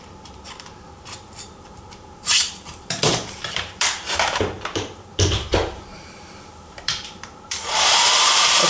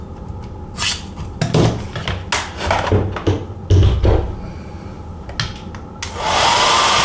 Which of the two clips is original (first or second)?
second